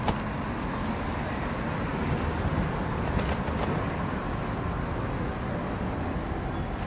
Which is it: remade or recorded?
recorded